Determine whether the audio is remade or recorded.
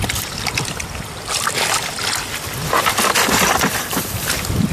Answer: remade